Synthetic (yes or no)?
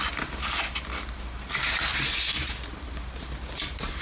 no